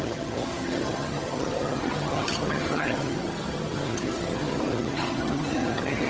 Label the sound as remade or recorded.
remade